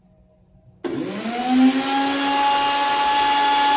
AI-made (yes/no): no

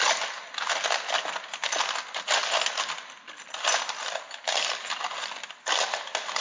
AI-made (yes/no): no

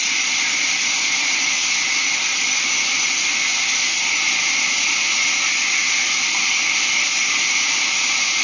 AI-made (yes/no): no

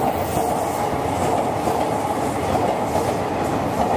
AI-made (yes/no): no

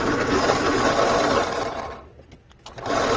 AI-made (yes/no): no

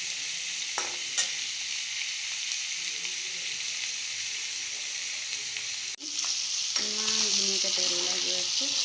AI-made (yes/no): no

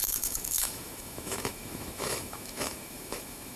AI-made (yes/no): yes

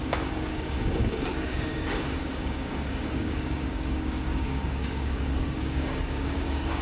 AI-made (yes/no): yes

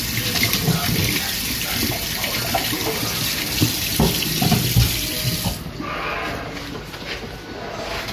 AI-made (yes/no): no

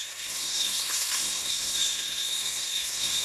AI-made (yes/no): yes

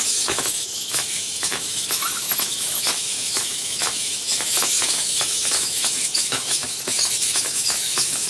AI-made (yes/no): yes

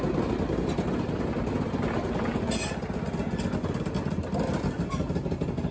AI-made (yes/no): no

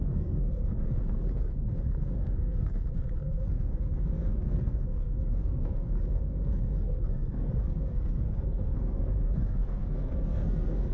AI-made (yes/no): yes